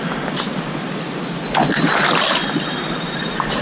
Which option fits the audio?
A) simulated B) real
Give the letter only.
B